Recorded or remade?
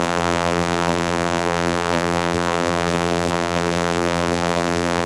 remade